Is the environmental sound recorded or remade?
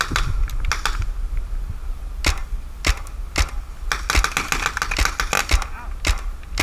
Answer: recorded